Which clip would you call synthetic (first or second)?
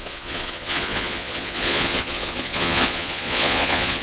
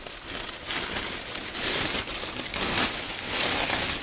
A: first